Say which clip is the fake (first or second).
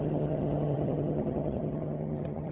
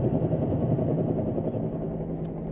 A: first